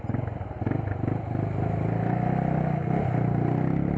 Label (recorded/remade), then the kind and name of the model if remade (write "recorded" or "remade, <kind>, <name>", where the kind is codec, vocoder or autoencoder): recorded